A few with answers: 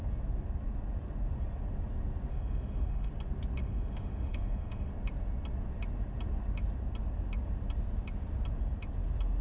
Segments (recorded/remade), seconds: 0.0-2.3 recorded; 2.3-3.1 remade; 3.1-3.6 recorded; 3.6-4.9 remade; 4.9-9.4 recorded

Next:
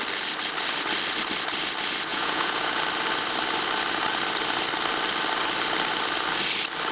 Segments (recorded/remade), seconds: 0.0-2.1 recorded; 2.1-2.8 remade; 2.8-6.9 recorded

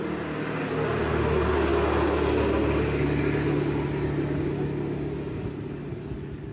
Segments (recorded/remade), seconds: 0.0-6.5 recorded

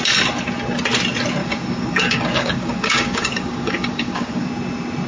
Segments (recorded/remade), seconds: 0.0-1.4 recorded; 1.4-4.5 remade; 4.5-5.1 recorded

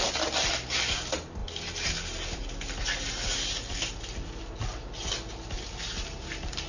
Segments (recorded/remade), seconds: 0.0-6.7 recorded

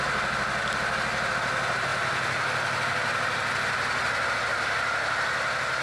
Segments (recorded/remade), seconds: 0.0-5.8 recorded